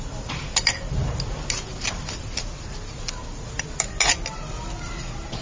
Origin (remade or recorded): recorded